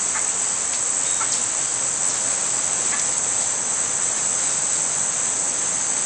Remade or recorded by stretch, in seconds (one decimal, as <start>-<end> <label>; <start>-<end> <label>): 0.0-6.1 recorded